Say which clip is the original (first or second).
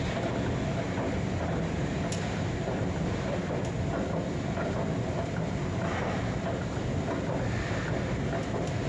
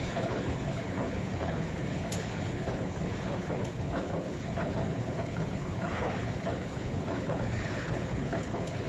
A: first